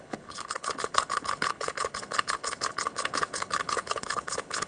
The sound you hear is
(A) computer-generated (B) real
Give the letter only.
A